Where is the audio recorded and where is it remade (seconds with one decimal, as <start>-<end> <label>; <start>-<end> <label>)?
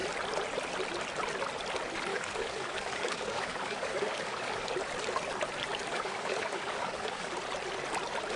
0.0-2.1 recorded; 2.1-4.7 remade; 4.7-5.9 recorded; 5.9-7.3 remade; 7.3-8.4 recorded